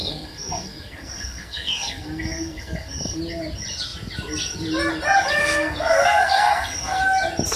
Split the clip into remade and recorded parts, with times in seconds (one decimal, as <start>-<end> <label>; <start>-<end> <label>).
0.0-3.2 remade; 3.2-5.4 recorded; 5.4-7.0 remade; 7.0-7.6 recorded